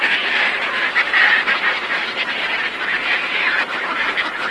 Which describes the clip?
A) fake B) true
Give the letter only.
B